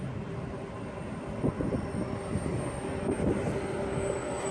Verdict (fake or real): real